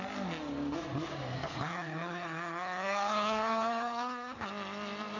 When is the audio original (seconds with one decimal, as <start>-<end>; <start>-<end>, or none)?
0.0-1.4; 4.5-5.2